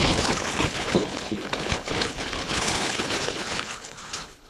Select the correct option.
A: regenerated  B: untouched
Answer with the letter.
A